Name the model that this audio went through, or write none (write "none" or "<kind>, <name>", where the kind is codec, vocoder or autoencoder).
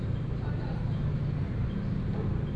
none